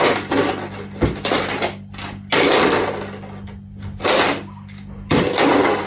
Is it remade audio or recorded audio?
recorded